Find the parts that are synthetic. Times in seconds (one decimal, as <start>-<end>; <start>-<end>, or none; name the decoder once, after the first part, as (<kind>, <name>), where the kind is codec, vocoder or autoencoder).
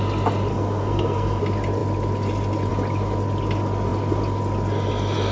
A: 0.5-1.4 (codec, SNAC)